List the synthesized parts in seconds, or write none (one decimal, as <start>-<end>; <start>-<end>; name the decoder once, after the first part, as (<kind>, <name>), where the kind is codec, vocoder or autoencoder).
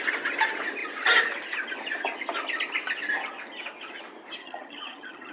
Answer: 4.4-5.3 (vocoder, HiFi-GAN)